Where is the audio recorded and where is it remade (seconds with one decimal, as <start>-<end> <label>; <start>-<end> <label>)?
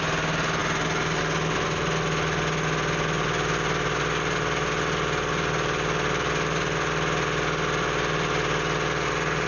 0.0-9.5 recorded